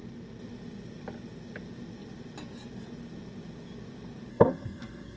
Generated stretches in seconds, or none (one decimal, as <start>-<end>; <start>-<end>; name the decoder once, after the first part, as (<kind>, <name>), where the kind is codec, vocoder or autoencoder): 4.3-5.2 (codec, SNAC)